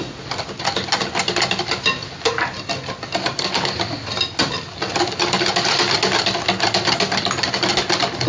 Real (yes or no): yes